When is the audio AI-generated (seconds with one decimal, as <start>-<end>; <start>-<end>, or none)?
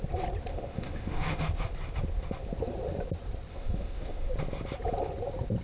0.5-1.4; 3.5-4.3